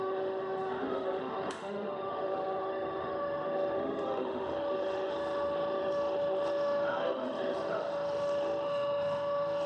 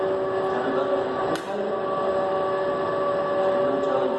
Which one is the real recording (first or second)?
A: second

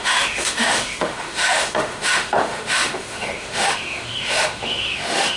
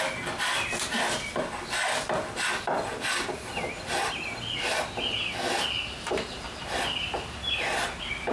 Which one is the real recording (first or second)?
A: second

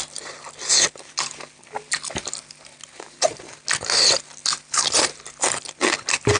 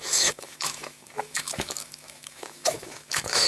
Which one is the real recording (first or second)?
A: first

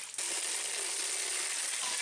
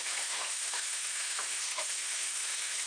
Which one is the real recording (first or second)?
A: first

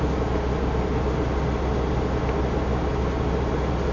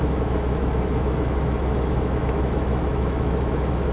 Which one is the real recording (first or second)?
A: first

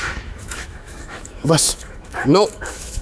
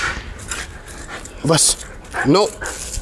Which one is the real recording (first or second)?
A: second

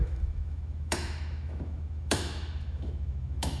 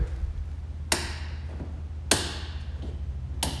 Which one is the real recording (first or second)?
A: second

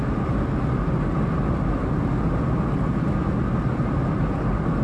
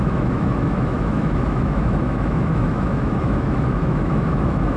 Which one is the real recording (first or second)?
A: first